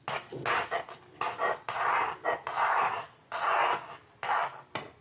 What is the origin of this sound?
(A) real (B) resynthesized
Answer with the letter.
A